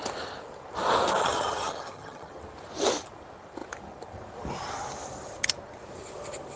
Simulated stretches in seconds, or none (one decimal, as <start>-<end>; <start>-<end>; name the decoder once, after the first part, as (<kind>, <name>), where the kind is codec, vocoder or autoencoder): 1.2-2.3 (vocoder, HiFi-GAN)